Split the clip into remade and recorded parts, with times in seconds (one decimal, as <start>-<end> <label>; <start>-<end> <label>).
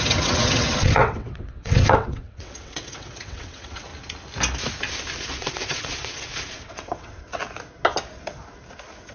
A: 0.0-3.9 remade; 3.9-5.3 recorded; 5.3-7.4 remade; 7.4-9.1 recorded